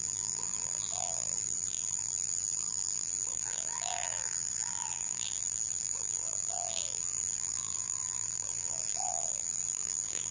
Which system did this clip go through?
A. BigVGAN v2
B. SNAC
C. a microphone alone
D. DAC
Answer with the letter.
A